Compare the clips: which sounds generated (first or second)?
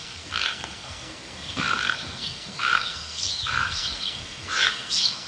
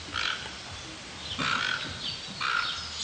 first